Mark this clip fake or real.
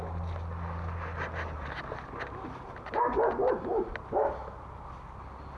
real